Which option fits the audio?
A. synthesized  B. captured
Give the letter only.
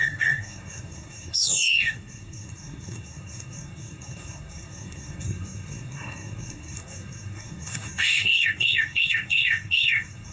A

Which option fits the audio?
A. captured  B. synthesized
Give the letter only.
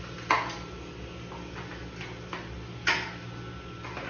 A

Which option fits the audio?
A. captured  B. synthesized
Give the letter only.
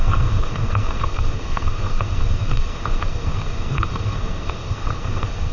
B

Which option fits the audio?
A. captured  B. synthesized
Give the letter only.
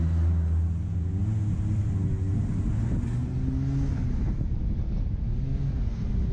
A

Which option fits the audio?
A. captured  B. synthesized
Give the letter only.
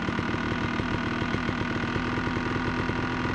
A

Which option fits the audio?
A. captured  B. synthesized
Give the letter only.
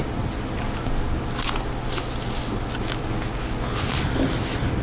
A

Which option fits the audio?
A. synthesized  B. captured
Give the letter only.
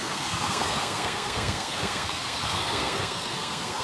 A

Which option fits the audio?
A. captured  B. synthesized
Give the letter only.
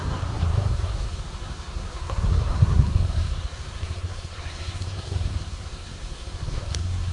B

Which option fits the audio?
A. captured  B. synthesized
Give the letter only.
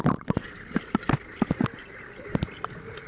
A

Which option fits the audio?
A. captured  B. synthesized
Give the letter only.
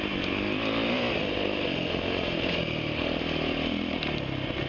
A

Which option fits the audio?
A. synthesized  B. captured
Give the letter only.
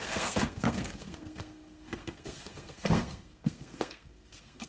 A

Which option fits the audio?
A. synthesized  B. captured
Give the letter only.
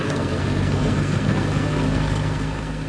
A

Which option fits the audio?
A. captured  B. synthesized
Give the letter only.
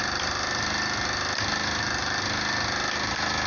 A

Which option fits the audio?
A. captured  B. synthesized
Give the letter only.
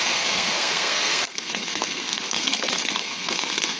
B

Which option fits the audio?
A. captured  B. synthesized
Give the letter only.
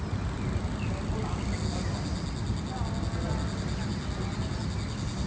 A